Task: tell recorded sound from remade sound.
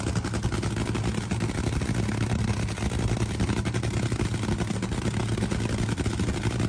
recorded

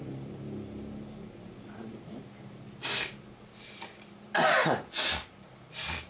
recorded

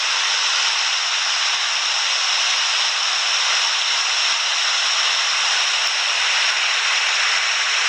recorded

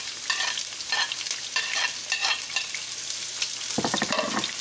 recorded